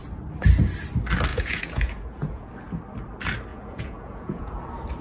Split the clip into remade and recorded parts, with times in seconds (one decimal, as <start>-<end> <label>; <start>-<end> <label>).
0.0-1.3 recorded; 1.3-2.5 remade; 2.5-3.5 recorded; 3.5-4.5 remade; 4.5-5.0 recorded

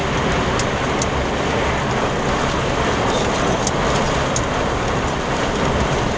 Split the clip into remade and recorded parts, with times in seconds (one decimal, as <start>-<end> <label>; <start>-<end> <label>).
0.0-6.2 recorded

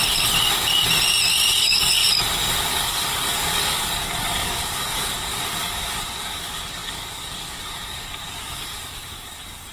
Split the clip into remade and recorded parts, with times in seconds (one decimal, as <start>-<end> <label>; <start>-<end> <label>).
0.0-1.6 recorded; 1.6-2.0 remade; 2.0-2.6 recorded; 2.6-9.7 remade

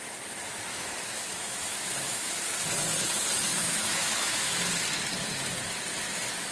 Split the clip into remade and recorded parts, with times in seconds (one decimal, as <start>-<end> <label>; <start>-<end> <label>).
0.0-0.7 recorded; 0.7-2.3 remade; 2.3-3.5 recorded; 3.5-4.6 remade; 4.6-6.5 recorded

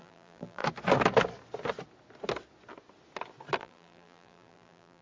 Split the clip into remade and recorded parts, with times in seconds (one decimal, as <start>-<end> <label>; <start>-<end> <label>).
0.0-0.6 remade; 0.6-3.6 recorded; 3.6-5.0 remade

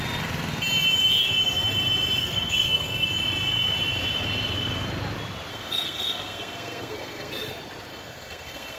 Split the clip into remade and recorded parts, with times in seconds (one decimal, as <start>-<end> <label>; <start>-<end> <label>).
0.0-2.2 recorded; 2.2-3.1 remade; 3.1-5.5 recorded; 5.5-7.3 remade; 7.3-7.9 recorded; 7.9-8.8 remade